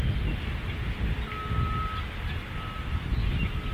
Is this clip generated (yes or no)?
no